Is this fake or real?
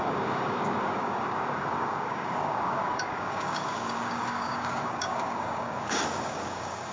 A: fake